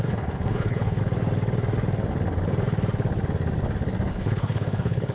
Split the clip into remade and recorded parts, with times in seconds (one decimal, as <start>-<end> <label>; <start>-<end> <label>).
0.0-1.0 remade; 1.0-4.1 recorded; 4.1-5.1 remade